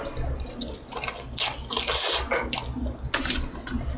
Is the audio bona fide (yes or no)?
yes